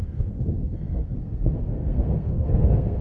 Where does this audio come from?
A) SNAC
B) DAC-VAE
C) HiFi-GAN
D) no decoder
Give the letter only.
A